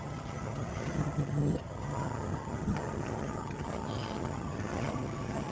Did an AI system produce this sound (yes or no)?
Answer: yes